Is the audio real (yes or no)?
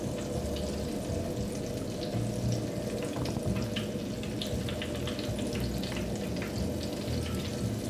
yes